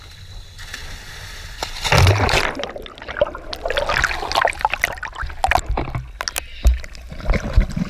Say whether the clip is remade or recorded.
recorded